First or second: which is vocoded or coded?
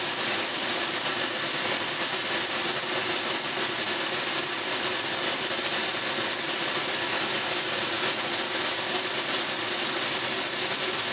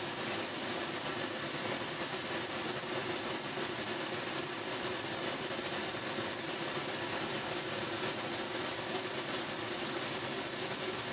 second